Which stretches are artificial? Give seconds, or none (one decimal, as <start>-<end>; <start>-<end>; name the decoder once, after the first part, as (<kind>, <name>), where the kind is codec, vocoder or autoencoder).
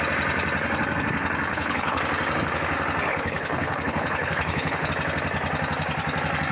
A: 1.5-2.0 (codec, HILCodec); 3.1-4.9